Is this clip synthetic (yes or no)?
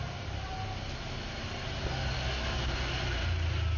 no